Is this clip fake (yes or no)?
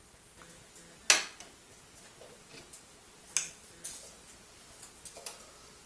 no